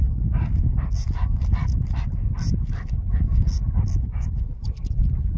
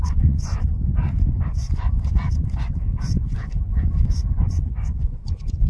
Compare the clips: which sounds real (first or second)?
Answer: first